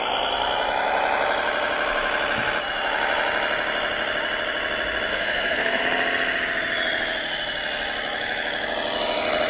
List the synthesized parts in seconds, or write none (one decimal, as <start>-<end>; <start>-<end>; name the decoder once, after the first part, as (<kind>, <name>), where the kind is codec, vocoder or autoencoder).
5.1-5.8 (codec, SNAC)